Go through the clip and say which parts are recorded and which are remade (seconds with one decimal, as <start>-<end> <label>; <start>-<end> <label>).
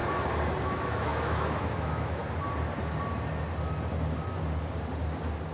0.0-0.6 recorded; 0.6-2.2 remade; 2.2-5.5 recorded